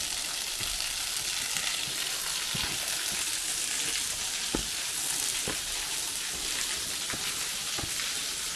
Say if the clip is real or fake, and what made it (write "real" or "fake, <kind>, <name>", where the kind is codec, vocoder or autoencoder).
real